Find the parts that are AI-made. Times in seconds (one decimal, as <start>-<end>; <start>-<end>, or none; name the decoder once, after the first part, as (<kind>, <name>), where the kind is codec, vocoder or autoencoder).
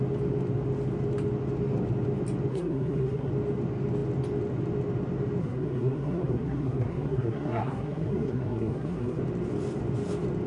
2.5-3.3 (codec, SNAC); 5.4-9.2